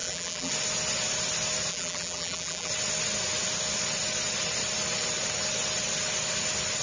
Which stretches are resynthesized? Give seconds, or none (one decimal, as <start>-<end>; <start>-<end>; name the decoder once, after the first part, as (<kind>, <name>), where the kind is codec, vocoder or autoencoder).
0.0-0.5 (vocoder, BigVGAN v2); 1.7-2.7